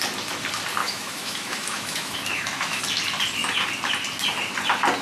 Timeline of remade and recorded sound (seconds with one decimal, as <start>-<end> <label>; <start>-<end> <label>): 0.0-0.8 recorded; 0.8-2.8 remade; 2.8-5.0 recorded